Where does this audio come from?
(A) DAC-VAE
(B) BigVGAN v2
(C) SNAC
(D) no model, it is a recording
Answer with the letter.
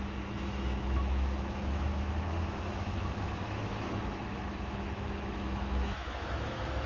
A